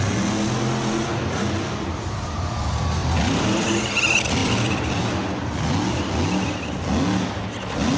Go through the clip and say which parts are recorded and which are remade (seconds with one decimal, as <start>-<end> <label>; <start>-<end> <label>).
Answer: 0.0-1.1 recorded; 1.1-2.0 remade; 2.0-3.0 recorded; 3.0-3.8 remade; 3.8-4.4 recorded; 4.4-5.0 remade; 5.0-8.0 recorded